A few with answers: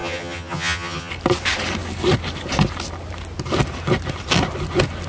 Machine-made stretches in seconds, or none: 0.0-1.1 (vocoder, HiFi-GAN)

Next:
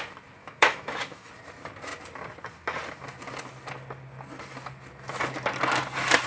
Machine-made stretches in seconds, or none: 0.4-1.3 (autoencoder, DAC-VAE)

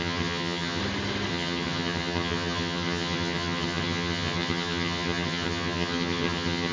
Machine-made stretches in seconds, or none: 0.0-0.8 (vocoder, HiFi-GAN); 1.3-6.7

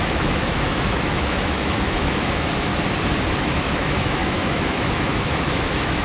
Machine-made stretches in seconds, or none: 0.0-2.7 (autoencoder, DAC-VAE); 3.4-6.0

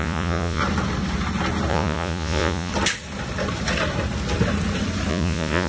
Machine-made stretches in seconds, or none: 0.0-0.6 (vocoder, Vocos); 1.7-2.7; 5.1-5.7

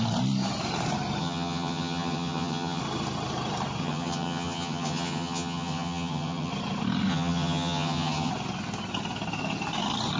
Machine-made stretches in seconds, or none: 1.2-2.8 (vocoder, HiFi-GAN); 3.8-6.5; 7.1-8.3

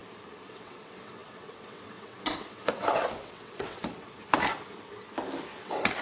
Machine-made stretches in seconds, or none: 0.5-4.2 (vocoder, WaveNeXt); 5.6-6.0